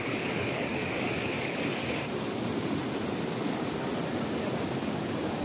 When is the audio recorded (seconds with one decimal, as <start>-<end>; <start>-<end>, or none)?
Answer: 1.8-3.3; 3.9-4.7